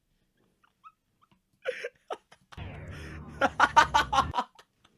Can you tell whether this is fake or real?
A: real